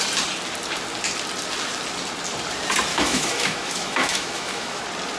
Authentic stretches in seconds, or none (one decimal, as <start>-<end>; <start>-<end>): 0.0-2.9; 4.8-5.2